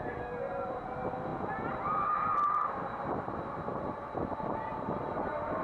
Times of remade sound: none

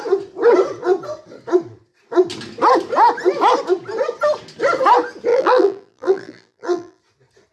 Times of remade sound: 5.3-7.0 (vocoder, BigVGAN v2)

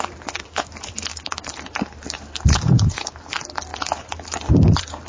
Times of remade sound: 1.1-3.2 (vocoder, BigVGAN v2); 3.7-5.1